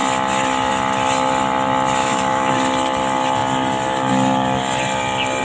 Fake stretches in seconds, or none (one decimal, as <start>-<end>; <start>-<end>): 2.0-2.5